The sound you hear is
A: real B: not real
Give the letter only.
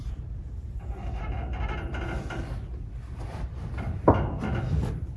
A